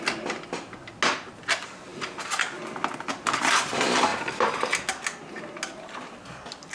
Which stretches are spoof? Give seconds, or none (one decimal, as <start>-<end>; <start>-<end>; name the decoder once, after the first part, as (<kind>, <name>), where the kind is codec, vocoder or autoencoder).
none